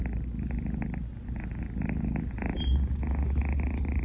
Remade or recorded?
recorded